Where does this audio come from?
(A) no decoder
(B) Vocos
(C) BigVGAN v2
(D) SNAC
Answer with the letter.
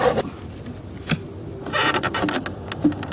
A